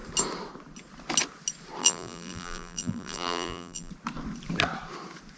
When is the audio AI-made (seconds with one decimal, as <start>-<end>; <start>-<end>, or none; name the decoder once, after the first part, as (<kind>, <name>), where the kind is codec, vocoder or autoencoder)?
1.8-3.9 (vocoder, BigVGAN v2)